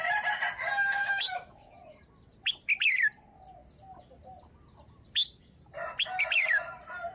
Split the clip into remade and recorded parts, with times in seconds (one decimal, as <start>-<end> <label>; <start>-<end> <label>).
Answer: 0.0-1.0 recorded; 1.0-1.7 remade; 1.7-7.1 recorded